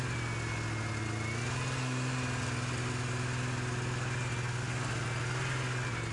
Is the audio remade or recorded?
recorded